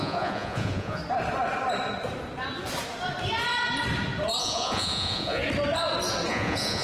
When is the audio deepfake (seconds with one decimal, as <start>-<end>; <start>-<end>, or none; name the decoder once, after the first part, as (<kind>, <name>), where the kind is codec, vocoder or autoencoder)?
0.0-1.0 (vocoder, Vocos); 4.4-5.4; 6.3-6.8